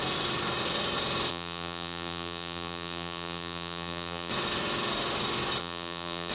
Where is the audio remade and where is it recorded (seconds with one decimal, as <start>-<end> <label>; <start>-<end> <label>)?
0.0-1.3 recorded; 1.3-4.3 remade; 4.3-5.6 recorded; 5.6-6.3 remade